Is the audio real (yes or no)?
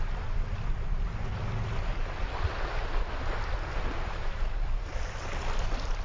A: yes